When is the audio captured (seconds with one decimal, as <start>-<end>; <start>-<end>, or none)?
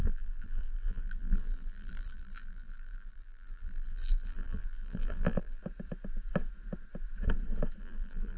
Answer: 5.6-7.8